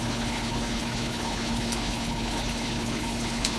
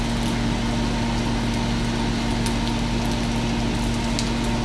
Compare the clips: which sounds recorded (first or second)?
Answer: second